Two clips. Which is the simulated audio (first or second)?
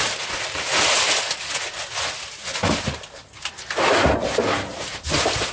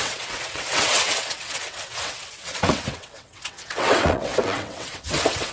second